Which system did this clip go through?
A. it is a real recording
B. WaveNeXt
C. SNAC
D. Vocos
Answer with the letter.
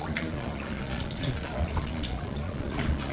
D